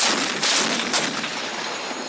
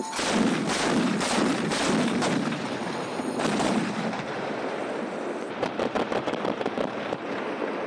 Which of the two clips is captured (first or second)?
first